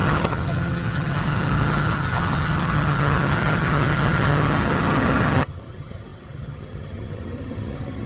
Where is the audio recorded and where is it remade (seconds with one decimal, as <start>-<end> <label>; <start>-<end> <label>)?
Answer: 0.0-8.1 remade